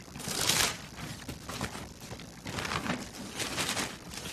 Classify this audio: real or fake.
real